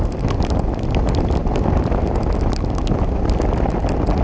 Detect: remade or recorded recorded